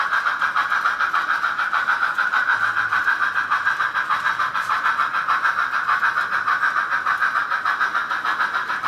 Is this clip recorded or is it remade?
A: recorded